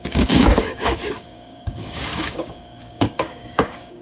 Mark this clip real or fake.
fake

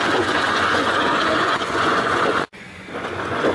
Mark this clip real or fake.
fake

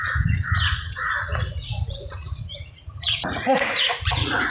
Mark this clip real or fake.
fake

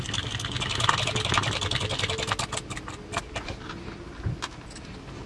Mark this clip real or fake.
real